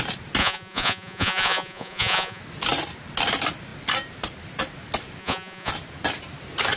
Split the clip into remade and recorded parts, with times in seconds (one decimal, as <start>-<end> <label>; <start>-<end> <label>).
0.0-0.4 recorded; 0.4-2.4 remade; 2.4-5.2 recorded; 5.2-5.7 remade; 5.7-6.8 recorded